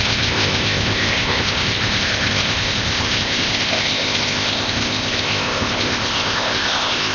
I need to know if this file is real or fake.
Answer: fake